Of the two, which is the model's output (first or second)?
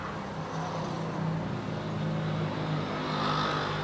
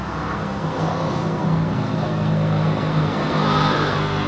second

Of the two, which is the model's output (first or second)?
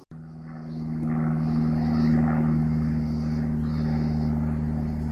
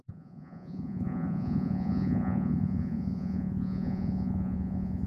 second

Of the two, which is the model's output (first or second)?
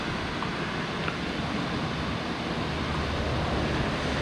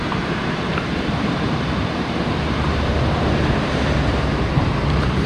second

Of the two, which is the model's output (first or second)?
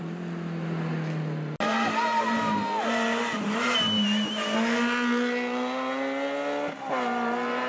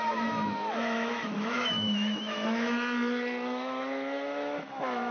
second